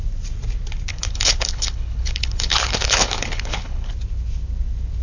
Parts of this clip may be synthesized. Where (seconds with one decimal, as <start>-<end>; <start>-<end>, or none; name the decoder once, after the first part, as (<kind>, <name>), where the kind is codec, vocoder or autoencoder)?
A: 0.9-3.9 (codec, HILCodec)